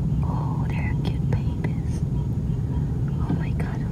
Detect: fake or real real